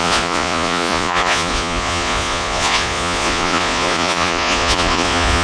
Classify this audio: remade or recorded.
remade